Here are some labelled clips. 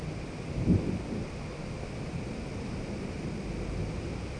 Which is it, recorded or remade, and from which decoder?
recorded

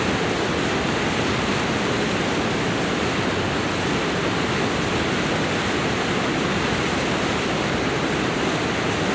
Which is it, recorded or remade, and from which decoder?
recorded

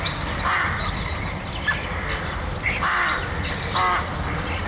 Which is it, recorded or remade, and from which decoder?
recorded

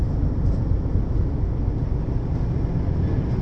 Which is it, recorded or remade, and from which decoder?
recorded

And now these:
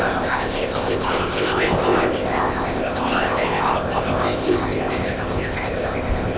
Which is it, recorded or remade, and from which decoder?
remade, codec, ZipCodec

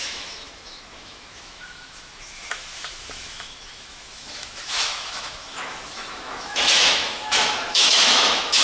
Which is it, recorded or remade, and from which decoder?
remade, autoencoder, DAC-VAE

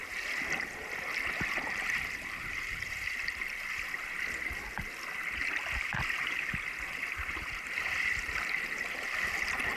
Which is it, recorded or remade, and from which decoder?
remade, vocoder, BigVGAN v2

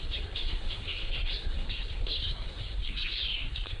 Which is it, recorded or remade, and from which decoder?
remade, codec, SNAC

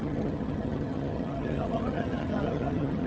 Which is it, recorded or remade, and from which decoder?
remade, vocoder, HiFi-GAN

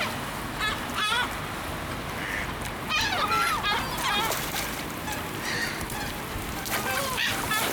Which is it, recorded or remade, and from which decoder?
recorded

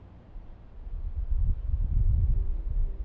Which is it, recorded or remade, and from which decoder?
recorded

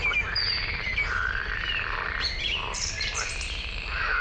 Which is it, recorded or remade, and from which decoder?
remade, vocoder, BigVGAN v2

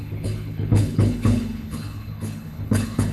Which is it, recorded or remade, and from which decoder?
remade, codec, HILCodec